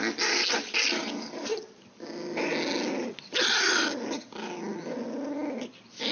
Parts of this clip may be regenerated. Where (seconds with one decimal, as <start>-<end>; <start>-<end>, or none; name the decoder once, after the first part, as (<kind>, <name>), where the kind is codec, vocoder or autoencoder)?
none